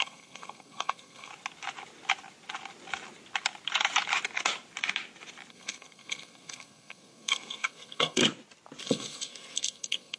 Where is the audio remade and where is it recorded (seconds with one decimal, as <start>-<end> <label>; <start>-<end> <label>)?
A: 0.0-1.3 remade; 1.3-5.5 recorded; 5.5-8.2 remade; 8.2-8.8 recorded; 8.8-10.2 remade